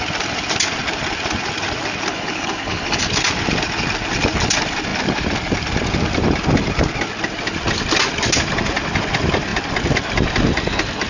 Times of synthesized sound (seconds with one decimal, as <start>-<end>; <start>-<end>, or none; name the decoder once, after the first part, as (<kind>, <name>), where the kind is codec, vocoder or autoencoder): 2.1-3.0 (codec, HILCodec)